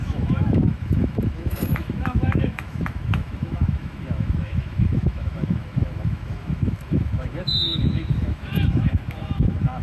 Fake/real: fake